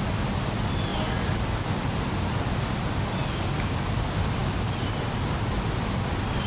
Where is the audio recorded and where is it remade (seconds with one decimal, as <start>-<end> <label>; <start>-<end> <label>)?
0.0-6.5 recorded